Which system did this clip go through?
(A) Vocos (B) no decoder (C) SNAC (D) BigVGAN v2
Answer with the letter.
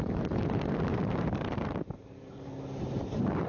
D